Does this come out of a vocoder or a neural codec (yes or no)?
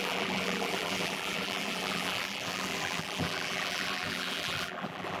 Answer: yes